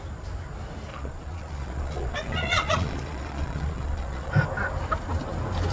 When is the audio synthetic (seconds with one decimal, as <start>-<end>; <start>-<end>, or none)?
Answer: 0.9-4.3